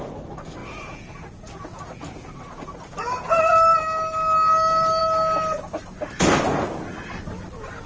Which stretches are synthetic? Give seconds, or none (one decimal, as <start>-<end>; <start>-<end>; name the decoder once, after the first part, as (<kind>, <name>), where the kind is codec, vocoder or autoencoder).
0.6-2.3 (vocoder, Vocos)